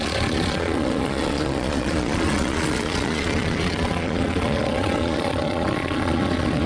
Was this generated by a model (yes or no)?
yes